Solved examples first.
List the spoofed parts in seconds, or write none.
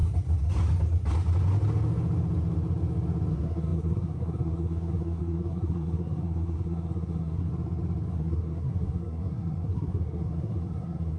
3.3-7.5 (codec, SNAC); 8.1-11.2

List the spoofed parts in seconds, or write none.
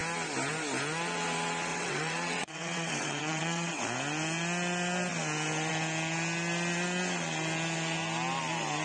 1.7-3.8 (vocoder, WaveNeXt)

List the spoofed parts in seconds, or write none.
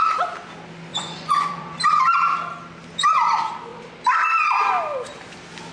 0.9-1.8 (vocoder, Vocos)